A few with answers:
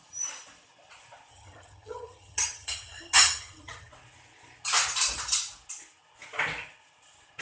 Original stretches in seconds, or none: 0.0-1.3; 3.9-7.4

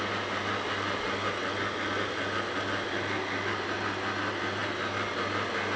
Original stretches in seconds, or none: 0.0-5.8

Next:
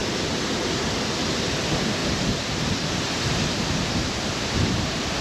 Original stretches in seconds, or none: 0.6-2.0